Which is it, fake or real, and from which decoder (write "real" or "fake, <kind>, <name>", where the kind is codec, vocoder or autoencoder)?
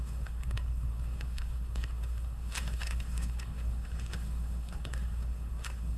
fake, codec, SNAC